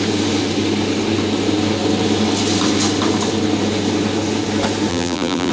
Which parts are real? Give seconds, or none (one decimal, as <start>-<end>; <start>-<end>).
0.0-4.9